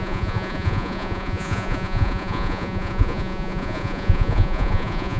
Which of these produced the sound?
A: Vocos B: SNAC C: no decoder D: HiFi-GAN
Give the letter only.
A